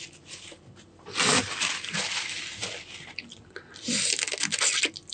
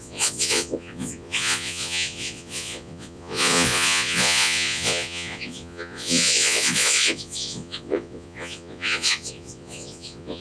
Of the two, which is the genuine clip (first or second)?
first